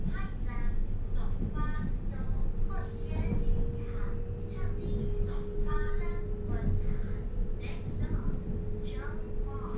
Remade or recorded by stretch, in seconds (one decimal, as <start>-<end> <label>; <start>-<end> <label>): 0.0-5.0 recorded; 5.0-6.0 remade; 6.0-9.8 recorded